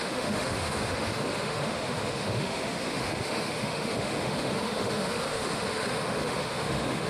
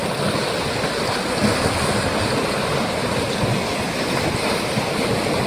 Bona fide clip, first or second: second